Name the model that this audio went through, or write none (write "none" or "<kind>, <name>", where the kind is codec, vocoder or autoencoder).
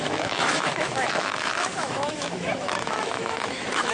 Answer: autoencoder, DAC-VAE